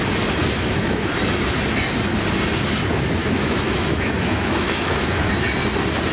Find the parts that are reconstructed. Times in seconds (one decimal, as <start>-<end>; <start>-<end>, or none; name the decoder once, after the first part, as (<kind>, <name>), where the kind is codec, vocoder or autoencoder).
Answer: 0.4-1.1 (autoencoder, DAC-VAE); 3.2-5.3